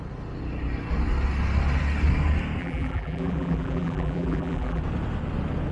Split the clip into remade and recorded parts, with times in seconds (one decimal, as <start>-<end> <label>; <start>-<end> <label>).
0.0-2.6 recorded; 2.6-4.8 remade; 4.8-5.7 recorded